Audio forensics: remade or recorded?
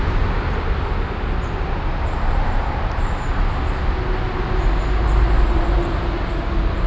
recorded